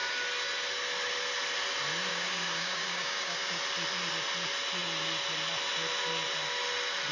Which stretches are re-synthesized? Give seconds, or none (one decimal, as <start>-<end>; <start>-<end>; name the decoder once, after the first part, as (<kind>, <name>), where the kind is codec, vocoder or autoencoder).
2.1-3.6 (codec, DAC)